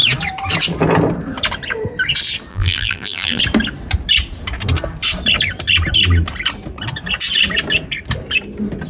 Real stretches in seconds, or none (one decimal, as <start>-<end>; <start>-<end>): 0.0-2.5; 3.4-8.9